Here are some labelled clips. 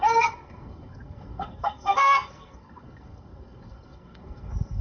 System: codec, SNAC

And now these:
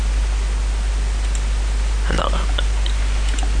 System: none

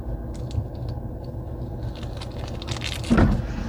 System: none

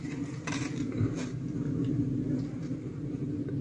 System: none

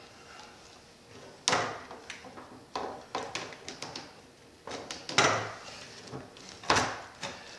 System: none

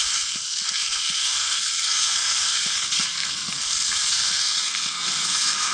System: codec, SNAC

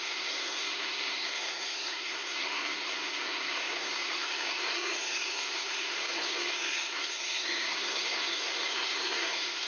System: codec, SNAC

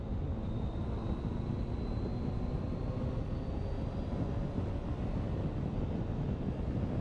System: none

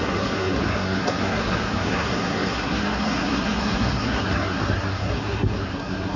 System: codec, SNAC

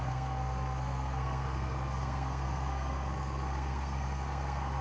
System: codec, SNAC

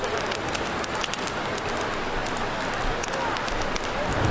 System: none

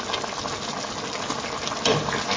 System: none